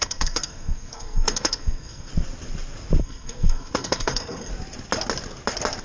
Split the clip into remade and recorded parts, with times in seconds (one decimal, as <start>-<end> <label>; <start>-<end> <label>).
0.0-2.1 remade; 2.1-3.0 recorded; 3.0-4.5 remade; 4.5-5.8 recorded